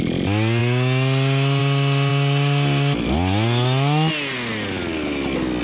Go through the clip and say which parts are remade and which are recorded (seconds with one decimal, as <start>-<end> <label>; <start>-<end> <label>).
0.0-5.6 recorded

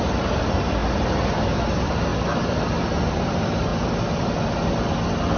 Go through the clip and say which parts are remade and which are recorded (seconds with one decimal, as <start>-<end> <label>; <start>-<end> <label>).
0.0-3.7 remade; 3.7-5.4 recorded